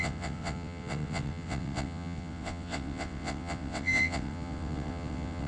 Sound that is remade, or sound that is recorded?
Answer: remade